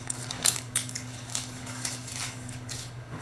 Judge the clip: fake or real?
fake